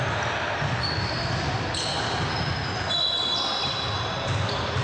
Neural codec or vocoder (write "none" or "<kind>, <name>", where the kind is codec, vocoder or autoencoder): none